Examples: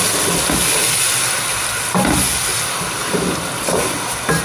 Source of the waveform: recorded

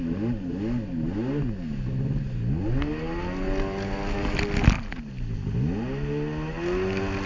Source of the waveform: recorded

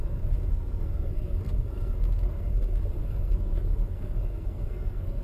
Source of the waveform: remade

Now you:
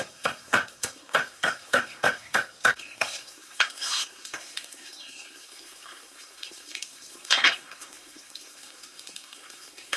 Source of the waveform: remade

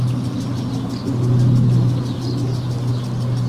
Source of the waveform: recorded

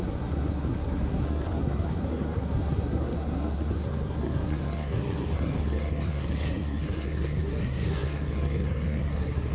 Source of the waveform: remade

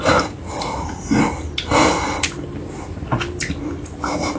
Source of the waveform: recorded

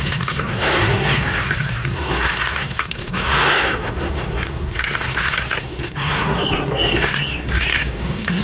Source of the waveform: remade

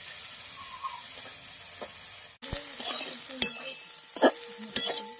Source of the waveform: recorded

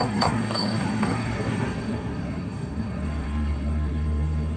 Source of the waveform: remade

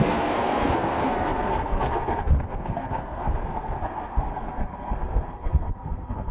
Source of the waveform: remade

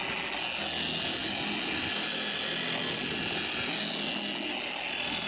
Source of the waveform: recorded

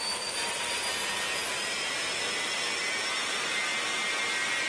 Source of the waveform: recorded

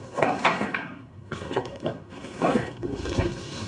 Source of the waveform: remade